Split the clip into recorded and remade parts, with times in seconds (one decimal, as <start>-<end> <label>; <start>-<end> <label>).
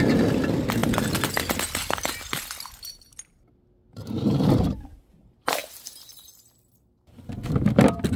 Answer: 0.0-5.6 recorded; 5.6-6.2 remade; 6.2-8.2 recorded